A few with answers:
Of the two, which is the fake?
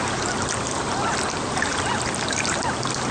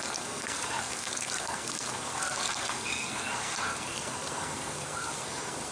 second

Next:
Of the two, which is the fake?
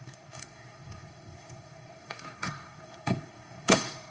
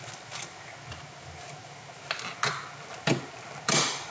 first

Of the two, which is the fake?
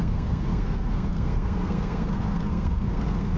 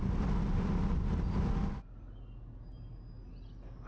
first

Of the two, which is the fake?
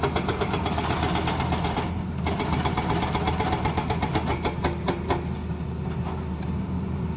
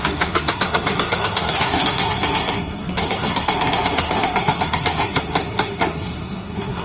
second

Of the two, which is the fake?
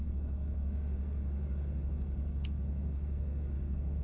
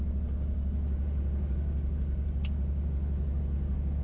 first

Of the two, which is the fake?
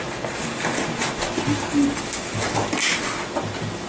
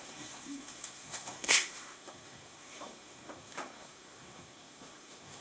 second